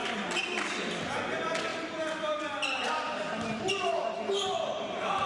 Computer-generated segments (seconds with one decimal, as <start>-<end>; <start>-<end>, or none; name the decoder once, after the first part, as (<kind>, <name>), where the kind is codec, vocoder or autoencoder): 0.0-5.3 (vocoder, BigVGAN v2)